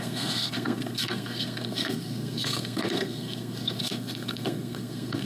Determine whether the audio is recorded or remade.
remade